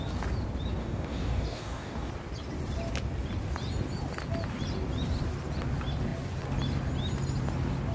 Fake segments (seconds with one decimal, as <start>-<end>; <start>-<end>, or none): 0.8-2.1